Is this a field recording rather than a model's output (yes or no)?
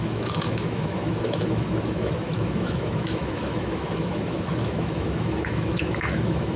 no